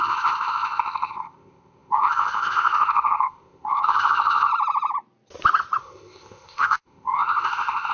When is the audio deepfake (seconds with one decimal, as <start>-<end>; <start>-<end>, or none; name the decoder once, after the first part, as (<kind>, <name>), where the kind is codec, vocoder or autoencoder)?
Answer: 0.0-4.5 (codec, ZipCodec); 5.8-7.9